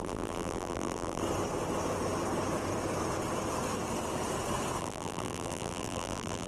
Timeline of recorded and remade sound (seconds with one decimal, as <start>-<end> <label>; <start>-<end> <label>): 0.0-1.2 remade; 1.2-4.8 recorded; 4.8-6.5 remade